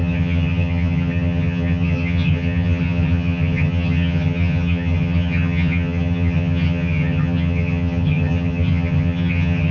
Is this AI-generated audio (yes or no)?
yes